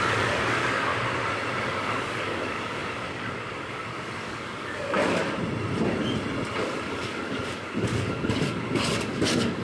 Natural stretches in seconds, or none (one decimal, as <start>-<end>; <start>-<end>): 0.9-1.6; 5.2-6.6